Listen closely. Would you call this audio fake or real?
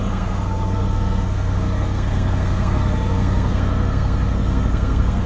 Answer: fake